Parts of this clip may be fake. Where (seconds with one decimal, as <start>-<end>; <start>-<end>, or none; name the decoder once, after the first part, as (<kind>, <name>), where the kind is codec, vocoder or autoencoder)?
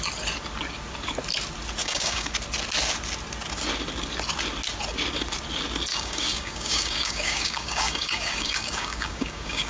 1.8-2.3 (codec, DAC); 5.9-9.7